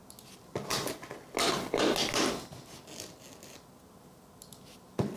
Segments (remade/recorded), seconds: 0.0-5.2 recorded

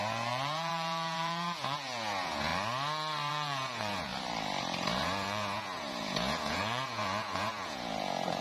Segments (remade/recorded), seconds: 0.0-2.5 remade; 2.5-3.3 recorded; 3.3-4.1 remade; 4.1-4.9 recorded; 4.9-8.4 remade